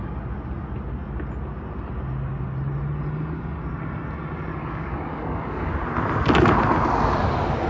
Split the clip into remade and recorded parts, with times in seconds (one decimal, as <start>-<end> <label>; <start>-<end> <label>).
0.0-4.6 recorded; 4.6-5.7 remade; 5.7-7.7 recorded